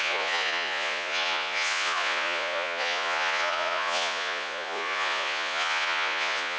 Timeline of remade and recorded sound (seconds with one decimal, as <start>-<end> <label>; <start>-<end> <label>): 0.0-6.6 remade